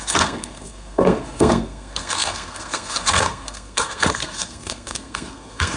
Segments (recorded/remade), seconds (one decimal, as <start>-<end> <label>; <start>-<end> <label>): 0.0-5.8 remade